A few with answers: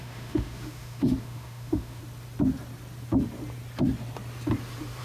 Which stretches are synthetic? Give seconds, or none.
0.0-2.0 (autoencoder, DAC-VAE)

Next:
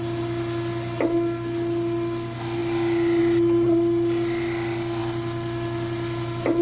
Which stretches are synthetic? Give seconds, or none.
none